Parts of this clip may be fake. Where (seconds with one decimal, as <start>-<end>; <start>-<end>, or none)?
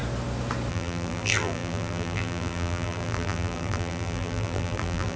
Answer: 0.7-5.2